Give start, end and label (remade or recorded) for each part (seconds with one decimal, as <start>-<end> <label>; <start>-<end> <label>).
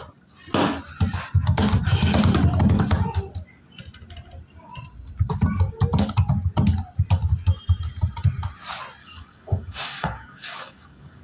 0.0-9.0 recorded; 9.0-11.2 remade